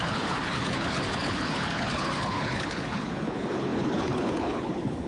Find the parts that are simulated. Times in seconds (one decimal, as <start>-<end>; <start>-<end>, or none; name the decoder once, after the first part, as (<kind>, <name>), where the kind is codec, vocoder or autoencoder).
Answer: 0.0-5.1 (codec, HILCodec)